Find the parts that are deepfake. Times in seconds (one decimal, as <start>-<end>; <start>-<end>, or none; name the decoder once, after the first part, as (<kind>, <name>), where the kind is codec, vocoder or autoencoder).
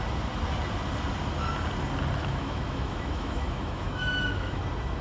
2.2-4.6 (autoencoder, DAC-VAE)